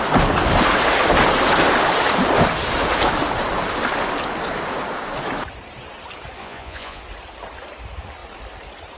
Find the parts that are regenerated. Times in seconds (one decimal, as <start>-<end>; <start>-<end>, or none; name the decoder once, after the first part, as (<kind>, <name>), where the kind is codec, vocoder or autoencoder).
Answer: 6.4-7.0 (vocoder, Vocos)